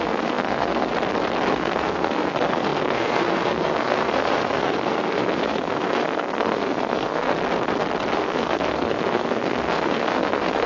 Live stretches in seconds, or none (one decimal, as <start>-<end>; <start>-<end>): 0.9-1.5; 7.3-8.2